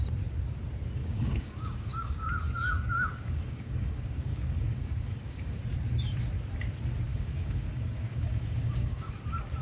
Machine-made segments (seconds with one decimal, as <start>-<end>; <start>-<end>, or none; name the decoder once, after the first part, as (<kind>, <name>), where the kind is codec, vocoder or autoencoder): 1.0-5.6 (codec, DAC); 7.1-9.1